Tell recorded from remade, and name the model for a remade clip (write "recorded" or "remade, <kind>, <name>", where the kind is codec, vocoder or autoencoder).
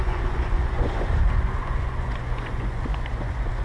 remade, vocoder, Vocos